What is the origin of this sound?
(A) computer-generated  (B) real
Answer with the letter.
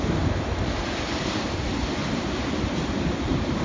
B